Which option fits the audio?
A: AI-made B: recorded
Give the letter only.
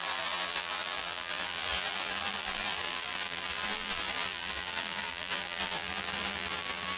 A